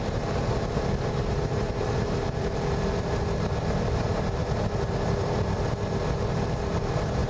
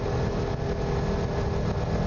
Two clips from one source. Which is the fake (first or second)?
first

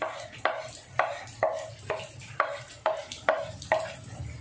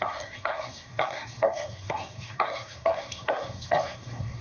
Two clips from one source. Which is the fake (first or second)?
second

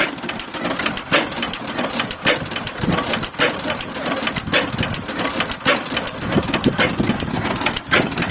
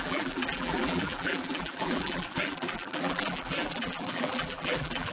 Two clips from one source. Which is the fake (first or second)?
second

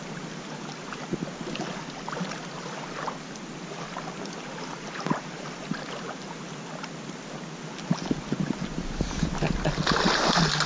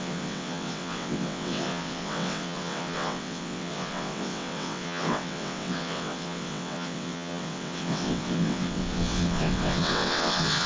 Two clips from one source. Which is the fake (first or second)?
second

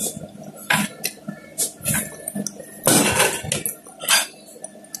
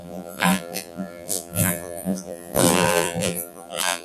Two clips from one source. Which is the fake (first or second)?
second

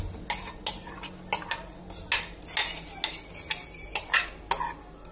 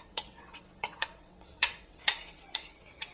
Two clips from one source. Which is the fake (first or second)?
second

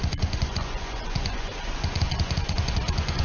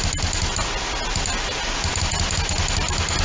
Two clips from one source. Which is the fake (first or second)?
first